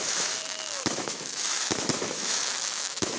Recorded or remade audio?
remade